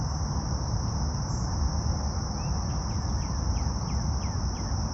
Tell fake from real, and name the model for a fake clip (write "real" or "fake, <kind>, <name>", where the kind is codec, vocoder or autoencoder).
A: real